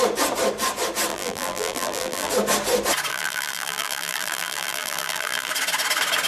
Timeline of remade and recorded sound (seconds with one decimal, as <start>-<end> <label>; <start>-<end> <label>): 0.0-1.1 recorded; 1.1-2.3 remade; 2.3-3.1 recorded; 3.1-5.5 remade; 5.5-6.3 recorded